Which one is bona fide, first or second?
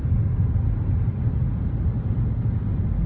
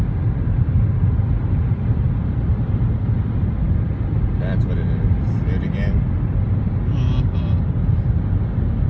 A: first